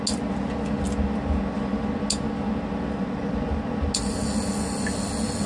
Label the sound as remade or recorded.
recorded